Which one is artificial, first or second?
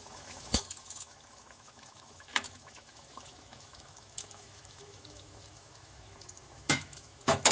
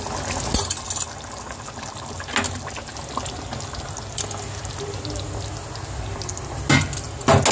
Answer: first